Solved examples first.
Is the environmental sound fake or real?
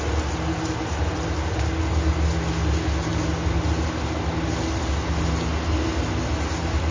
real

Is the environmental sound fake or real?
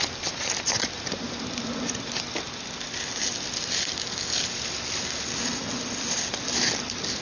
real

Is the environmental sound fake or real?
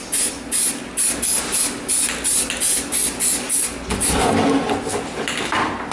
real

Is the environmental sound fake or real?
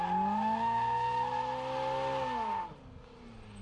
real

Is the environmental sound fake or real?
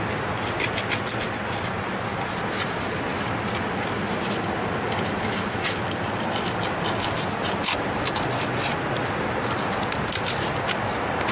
real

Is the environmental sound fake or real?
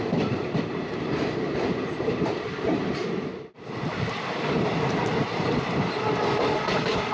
fake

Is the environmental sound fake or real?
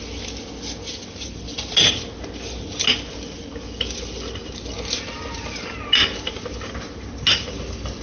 real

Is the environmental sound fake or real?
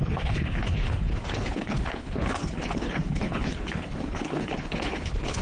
fake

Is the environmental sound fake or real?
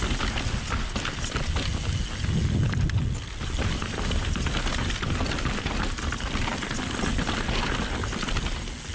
real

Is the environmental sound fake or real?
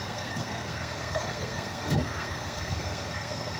fake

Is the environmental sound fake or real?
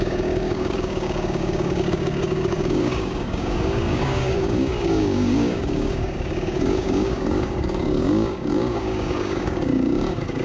fake